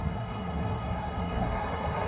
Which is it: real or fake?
fake